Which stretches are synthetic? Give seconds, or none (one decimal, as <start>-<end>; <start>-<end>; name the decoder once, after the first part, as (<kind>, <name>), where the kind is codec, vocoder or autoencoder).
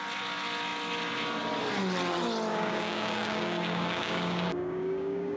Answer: 2.5-5.4 (codec, DAC)